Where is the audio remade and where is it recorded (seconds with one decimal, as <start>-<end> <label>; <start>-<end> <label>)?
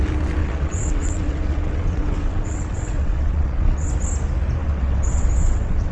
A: 0.0-0.4 recorded; 0.4-3.9 remade; 3.9-4.6 recorded; 4.6-5.9 remade